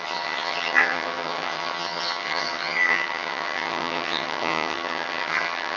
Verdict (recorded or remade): remade